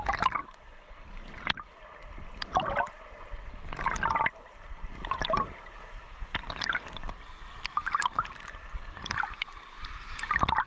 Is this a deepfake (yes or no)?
no